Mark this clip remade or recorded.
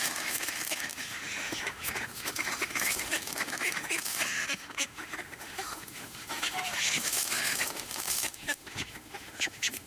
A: remade